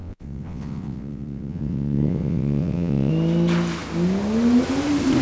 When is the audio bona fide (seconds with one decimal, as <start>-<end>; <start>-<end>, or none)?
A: 3.1-5.2